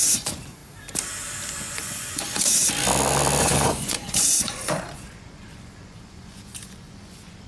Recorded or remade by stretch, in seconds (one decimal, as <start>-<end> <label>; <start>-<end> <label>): 0.0-0.6 remade; 0.6-1.5 recorded; 1.5-2.6 remade; 2.6-3.4 recorded; 3.4-7.5 remade